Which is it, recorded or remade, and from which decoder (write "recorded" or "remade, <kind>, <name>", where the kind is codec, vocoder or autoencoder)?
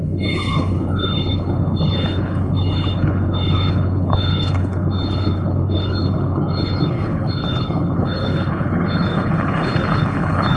remade, codec, HILCodec